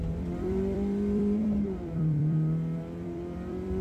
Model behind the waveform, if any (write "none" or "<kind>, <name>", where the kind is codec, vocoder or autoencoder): vocoder, BigVGAN v2